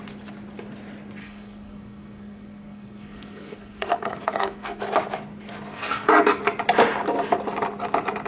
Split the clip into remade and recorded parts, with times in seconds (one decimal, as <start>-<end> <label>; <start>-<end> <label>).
0.0-1.2 recorded; 1.2-4.8 remade; 4.8-5.7 recorded; 5.7-6.4 remade; 6.4-8.3 recorded